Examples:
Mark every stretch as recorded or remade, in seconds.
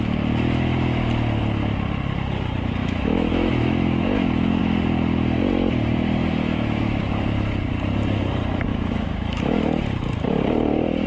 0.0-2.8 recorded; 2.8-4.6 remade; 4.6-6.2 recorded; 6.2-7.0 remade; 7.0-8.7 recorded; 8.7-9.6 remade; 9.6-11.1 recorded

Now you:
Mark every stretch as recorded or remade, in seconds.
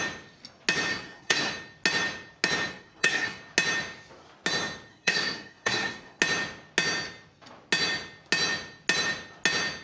0.0-0.9 recorded; 0.9-1.5 remade; 1.5-2.7 recorded; 2.7-3.4 remade; 3.4-4.9 recorded; 4.9-6.2 remade; 6.2-9.8 recorded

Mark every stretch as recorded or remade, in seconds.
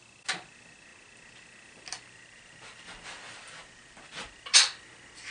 0.0-5.3 recorded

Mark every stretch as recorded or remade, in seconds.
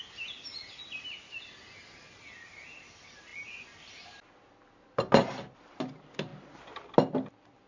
0.0-7.7 recorded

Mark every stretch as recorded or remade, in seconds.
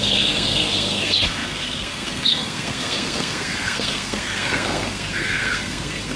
0.0-6.2 remade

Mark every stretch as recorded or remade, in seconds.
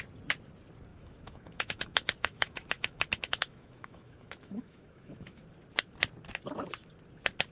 0.0-0.9 recorded; 0.9-5.4 remade; 5.4-7.5 recorded